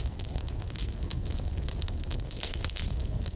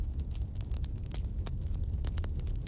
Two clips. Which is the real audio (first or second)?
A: second